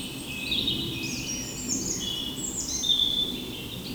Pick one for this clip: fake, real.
fake